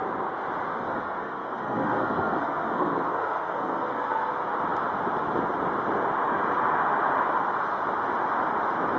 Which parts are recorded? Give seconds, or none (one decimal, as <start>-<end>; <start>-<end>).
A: 0.0-0.7; 4.3-9.0